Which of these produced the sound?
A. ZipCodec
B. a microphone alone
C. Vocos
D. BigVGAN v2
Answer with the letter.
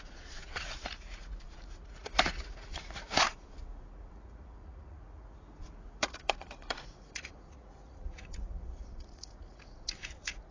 C